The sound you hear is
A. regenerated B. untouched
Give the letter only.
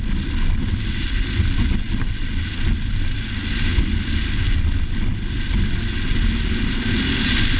B